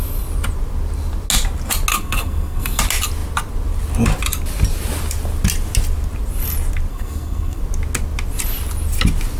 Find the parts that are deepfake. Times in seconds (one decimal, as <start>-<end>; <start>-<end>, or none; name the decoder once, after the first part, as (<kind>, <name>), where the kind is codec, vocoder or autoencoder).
1.9-2.8 (codec, SNAC); 6.9-7.6